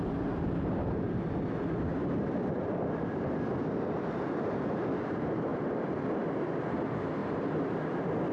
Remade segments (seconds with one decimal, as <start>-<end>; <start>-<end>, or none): 1.9-2.6